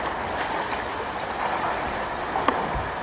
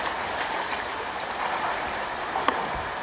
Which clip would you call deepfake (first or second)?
second